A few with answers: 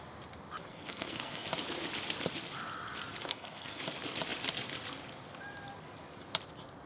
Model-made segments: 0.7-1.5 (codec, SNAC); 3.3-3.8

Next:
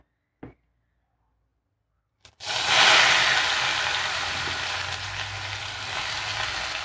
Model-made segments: none